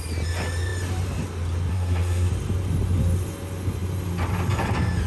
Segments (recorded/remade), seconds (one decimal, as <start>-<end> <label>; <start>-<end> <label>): 0.0-1.7 recorded; 1.7-2.3 remade; 2.3-5.1 recorded